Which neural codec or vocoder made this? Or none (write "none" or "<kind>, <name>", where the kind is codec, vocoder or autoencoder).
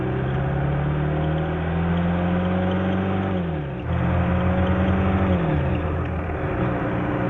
none